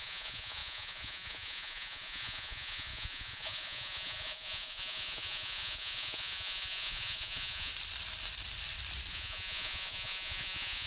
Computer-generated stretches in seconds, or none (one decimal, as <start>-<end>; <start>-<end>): 0.0-7.7; 9.1-10.9